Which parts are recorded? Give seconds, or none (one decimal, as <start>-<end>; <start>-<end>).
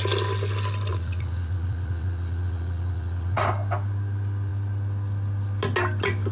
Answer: 0.0-0.9; 3.4-6.3